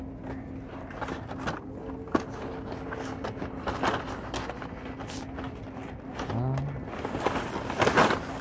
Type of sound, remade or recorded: recorded